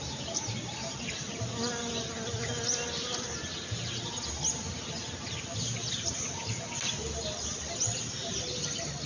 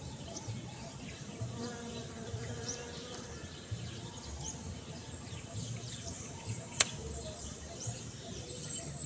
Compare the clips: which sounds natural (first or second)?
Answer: first